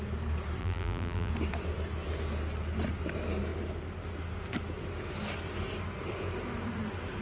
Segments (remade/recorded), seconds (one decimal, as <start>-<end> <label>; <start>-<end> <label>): 0.0-0.6 recorded; 0.6-1.3 remade; 1.3-7.2 recorded